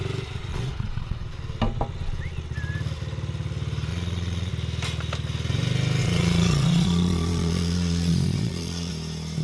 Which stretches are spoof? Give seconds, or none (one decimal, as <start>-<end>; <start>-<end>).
0.5-1.3; 3.9-4.5; 6.0-8.9